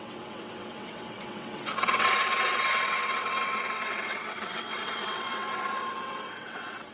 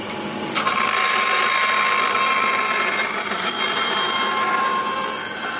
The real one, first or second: second